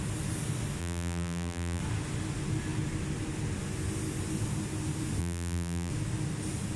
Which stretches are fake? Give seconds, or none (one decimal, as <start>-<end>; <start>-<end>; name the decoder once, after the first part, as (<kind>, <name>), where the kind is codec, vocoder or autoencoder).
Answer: 0.8-1.8 (vocoder, BigVGAN v2); 5.2-5.9